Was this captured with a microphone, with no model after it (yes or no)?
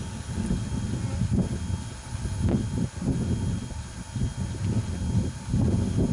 yes